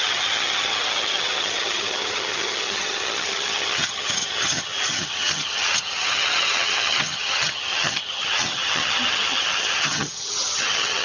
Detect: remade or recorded remade